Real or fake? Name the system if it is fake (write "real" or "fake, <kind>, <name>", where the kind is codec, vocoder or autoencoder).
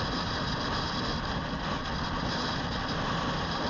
fake, vocoder, BigVGAN v2